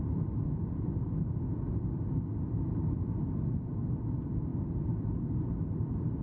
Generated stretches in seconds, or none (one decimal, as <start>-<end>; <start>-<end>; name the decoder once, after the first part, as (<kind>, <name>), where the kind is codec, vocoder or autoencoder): none